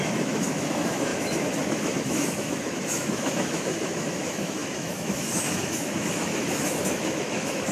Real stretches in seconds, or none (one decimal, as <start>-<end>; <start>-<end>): none